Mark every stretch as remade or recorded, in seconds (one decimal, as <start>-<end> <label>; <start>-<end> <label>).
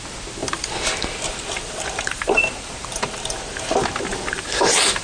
0.0-0.4 recorded; 0.4-3.4 remade; 3.4-4.1 recorded; 4.1-5.0 remade